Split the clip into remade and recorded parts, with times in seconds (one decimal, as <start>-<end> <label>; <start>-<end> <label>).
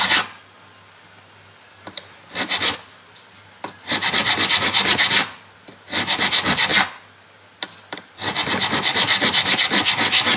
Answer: 0.0-10.4 recorded